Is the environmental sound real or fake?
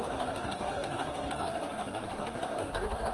fake